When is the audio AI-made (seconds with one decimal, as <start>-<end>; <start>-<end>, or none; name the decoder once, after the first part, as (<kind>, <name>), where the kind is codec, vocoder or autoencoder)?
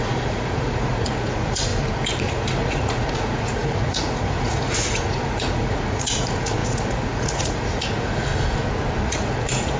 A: 0.0-1.7 (vocoder, Vocos); 2.3-8.3; 9.0-9.8